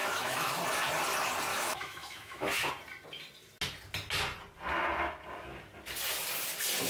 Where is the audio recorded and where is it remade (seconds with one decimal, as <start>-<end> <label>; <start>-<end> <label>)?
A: 0.0-0.6 remade; 0.6-1.5 recorded; 1.5-2.7 remade; 2.7-6.9 recorded